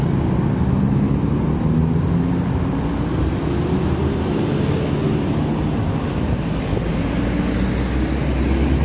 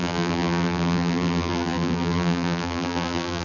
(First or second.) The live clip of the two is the first